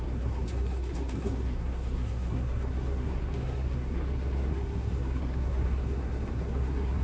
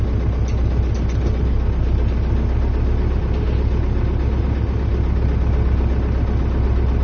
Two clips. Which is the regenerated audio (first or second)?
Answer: first